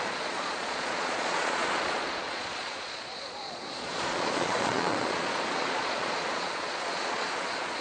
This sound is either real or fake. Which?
fake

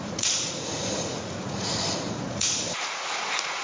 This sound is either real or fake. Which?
fake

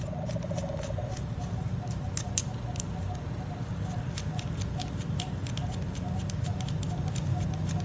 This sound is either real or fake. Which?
real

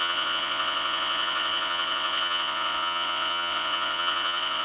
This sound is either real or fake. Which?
fake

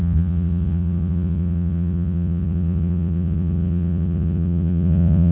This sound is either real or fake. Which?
fake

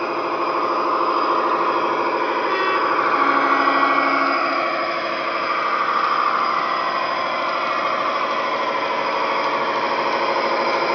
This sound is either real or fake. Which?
real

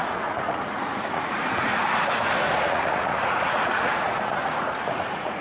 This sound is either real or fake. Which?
fake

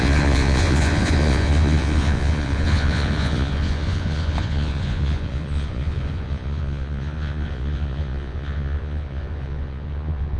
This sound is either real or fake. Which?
fake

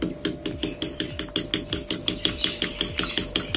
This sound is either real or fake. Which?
real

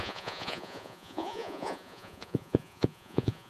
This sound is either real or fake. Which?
fake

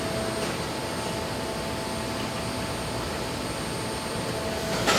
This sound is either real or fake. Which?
real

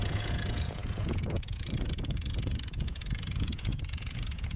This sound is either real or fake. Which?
fake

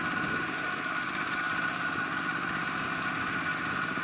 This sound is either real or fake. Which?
real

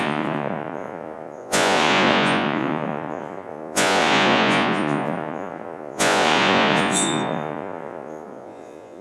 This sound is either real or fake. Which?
fake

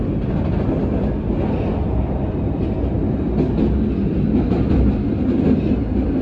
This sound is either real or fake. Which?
real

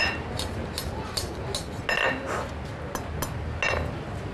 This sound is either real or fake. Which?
real